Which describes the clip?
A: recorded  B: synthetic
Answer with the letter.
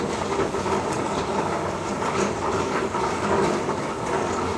B